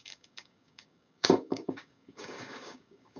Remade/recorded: remade